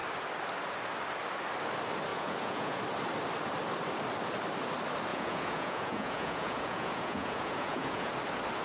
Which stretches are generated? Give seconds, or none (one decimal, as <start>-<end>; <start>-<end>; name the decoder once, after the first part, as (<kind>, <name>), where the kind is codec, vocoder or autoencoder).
2.1-2.8 (vocoder, Vocos); 5.1-8.1